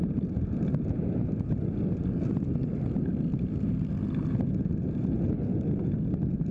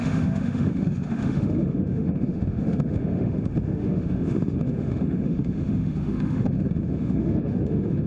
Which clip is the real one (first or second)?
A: first